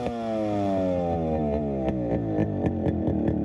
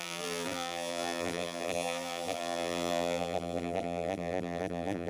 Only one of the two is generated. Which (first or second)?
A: second